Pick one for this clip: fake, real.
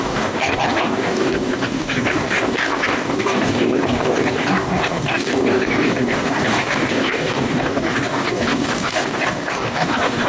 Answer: fake